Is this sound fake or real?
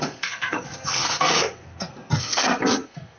fake